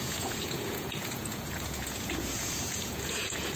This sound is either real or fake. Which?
fake